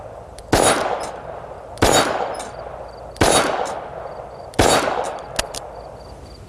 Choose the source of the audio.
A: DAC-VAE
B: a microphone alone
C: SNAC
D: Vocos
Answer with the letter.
B